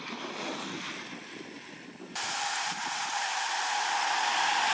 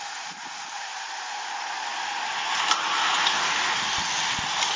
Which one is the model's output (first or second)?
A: first